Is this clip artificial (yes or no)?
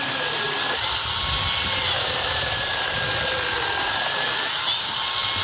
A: no